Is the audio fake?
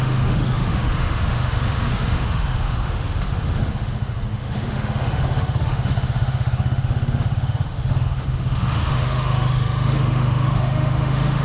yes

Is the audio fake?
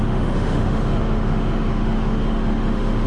yes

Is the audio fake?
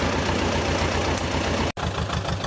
no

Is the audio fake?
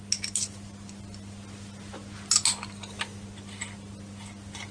no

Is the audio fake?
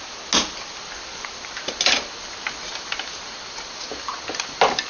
no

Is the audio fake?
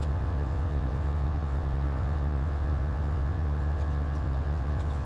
yes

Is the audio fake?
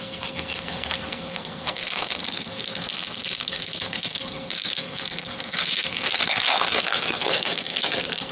yes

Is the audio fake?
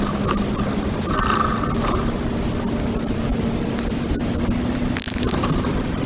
no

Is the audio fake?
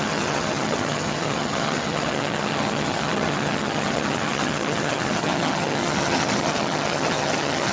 yes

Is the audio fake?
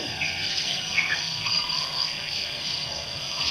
yes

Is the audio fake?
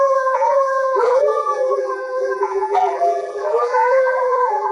yes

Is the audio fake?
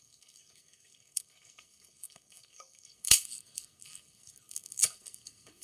yes